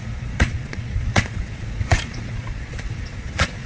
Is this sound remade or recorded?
remade